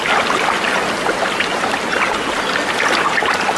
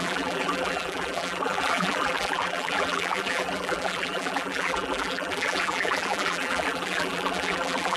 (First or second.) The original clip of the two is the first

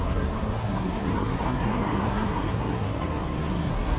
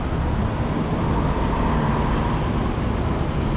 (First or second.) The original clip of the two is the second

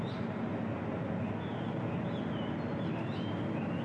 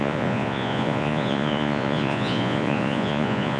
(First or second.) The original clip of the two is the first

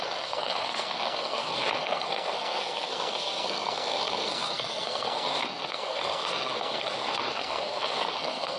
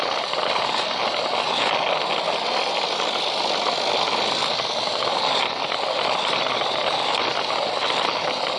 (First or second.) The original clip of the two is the second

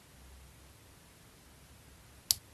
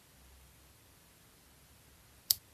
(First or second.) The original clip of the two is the first